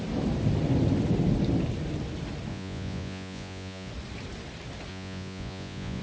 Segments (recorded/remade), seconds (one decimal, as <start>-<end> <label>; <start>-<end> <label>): 0.0-2.5 recorded; 2.5-3.9 remade; 3.9-4.9 recorded; 4.9-6.0 remade